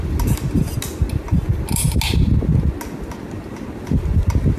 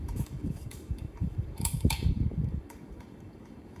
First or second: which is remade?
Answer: second